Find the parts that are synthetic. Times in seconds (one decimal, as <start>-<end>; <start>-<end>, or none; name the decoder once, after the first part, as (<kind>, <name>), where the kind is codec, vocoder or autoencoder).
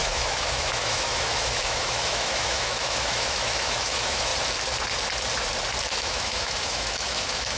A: 0.0-4.3 (autoencoder, DAC-VAE); 5.8-7.6